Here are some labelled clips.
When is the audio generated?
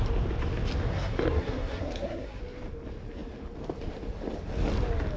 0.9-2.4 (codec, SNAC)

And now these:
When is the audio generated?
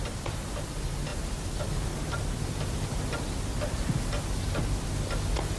none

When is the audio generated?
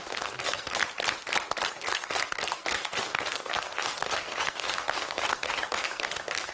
0.0-0.8 (codec, SNAC); 1.7-6.5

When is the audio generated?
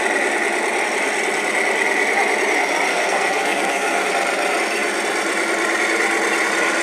2.9-4.1 (codec, SNAC)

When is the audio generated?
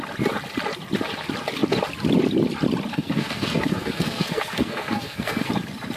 2.9-5.5 (codec, SNAC)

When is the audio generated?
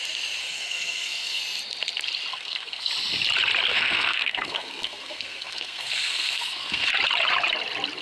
0.4-1.4 (codec, SNAC); 2.3-2.9; 3.7-6.9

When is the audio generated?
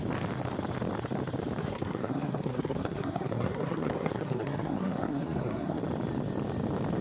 1.6-5.8 (codec, SNAC)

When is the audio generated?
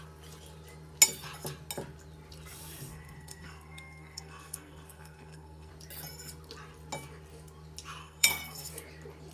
2.9-5.7 (codec, SNAC); 8.0-8.7